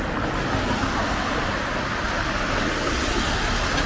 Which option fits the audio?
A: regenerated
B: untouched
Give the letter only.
B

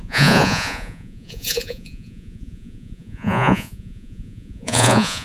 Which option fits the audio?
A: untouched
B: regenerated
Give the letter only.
B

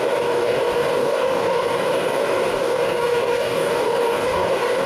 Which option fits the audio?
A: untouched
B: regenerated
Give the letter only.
B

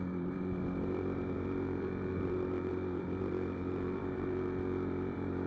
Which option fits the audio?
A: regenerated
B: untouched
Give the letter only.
A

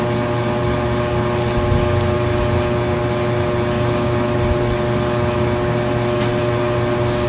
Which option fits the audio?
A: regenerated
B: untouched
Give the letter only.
B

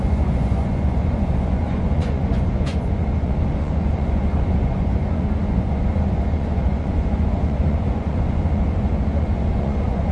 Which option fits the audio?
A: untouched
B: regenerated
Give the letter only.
B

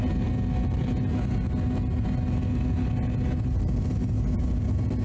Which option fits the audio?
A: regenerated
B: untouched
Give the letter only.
B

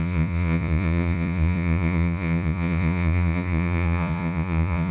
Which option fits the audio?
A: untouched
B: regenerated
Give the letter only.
B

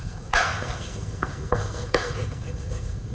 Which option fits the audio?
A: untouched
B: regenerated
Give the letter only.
B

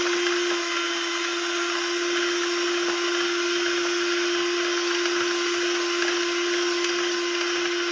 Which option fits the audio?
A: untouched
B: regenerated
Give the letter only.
A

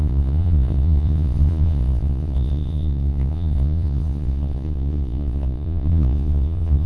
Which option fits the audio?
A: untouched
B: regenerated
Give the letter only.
B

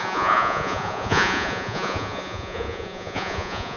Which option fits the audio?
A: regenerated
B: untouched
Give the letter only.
A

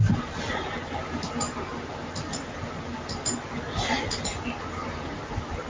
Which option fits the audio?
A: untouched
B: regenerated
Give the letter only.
A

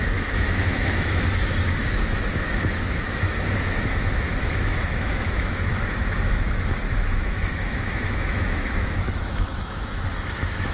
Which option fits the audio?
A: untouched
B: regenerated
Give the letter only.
B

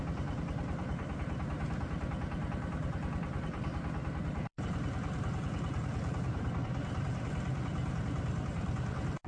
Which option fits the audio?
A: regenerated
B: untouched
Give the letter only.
A